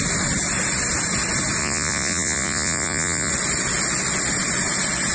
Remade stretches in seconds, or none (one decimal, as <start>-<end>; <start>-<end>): 1.6-3.3

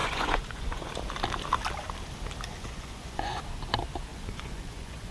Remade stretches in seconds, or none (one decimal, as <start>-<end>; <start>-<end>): 0.0-0.9; 2.5-3.4; 4.1-5.1

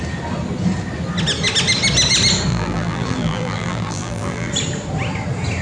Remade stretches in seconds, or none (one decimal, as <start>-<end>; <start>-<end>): 2.5-4.5

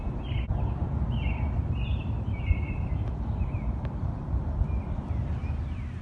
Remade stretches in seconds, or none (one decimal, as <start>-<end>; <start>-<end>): none